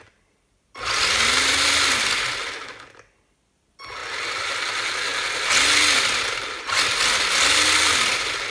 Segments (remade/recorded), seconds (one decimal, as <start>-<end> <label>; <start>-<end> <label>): 0.0-8.5 recorded